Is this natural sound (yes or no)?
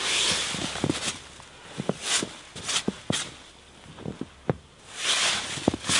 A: yes